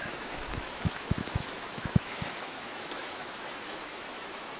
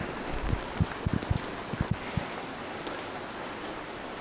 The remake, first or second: first